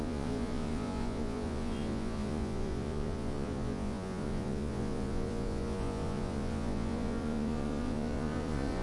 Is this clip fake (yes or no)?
yes